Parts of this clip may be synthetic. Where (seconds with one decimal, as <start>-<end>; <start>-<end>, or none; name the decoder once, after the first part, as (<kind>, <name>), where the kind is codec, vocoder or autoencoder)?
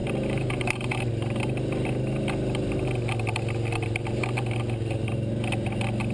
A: 0.0-1.1 (vocoder, BigVGAN v2)